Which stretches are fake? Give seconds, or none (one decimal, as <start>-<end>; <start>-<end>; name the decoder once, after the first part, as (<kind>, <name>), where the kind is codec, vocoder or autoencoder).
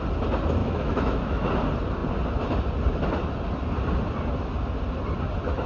0.6-1.5 (autoencoder, DAC-VAE)